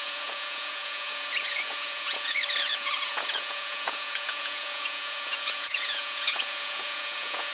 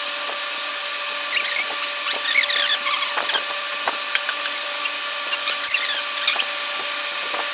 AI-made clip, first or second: first